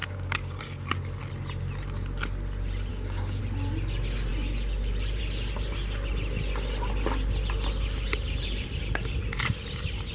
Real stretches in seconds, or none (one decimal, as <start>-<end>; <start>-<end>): 0.9-2.9; 3.4-10.1